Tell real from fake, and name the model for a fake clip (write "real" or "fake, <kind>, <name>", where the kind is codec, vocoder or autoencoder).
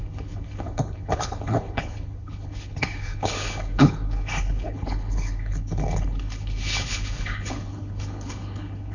fake, codec, HILCodec